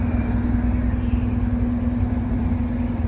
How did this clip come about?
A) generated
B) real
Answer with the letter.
B